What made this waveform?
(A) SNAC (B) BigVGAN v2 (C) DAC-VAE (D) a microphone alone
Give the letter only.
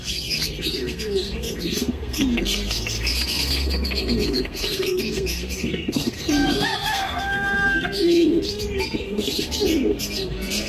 A